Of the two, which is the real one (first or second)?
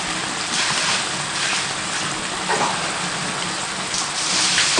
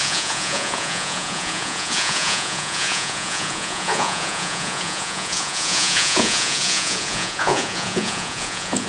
first